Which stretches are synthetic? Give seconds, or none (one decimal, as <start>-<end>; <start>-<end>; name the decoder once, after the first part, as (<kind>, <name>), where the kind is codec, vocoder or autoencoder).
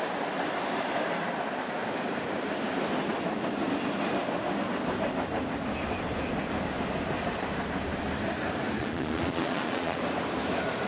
8.8-10.0 (vocoder, Vocos)